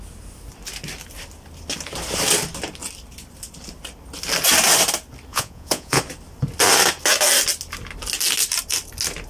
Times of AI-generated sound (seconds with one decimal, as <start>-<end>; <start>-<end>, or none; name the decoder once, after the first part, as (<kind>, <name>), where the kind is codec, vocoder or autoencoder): 5.3-6.0 (vocoder, Vocos)